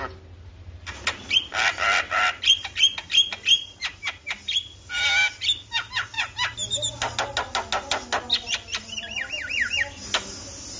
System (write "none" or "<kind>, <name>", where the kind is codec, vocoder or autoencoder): none